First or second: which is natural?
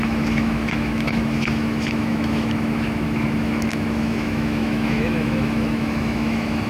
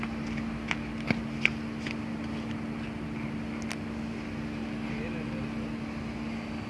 second